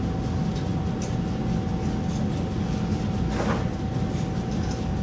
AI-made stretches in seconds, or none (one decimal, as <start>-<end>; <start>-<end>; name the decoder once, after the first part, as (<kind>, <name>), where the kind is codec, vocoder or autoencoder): none